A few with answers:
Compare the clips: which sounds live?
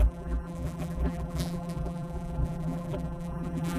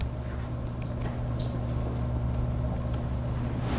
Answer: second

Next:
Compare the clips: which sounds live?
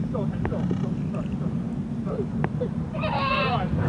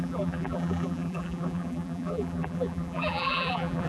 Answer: first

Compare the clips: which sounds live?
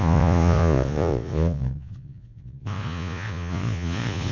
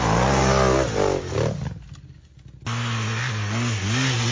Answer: second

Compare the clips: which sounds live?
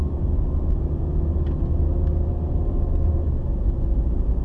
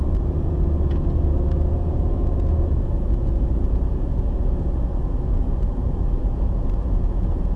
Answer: first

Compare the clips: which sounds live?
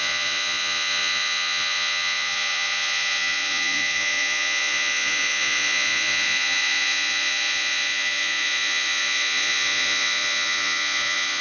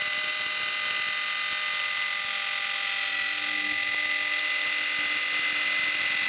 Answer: second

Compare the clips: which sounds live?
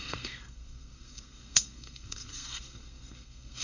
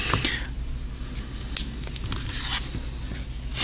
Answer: second